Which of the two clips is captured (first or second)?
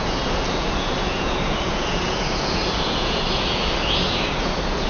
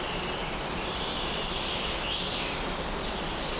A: second